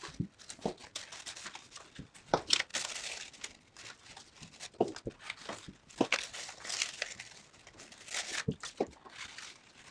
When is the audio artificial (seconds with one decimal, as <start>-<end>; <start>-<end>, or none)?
none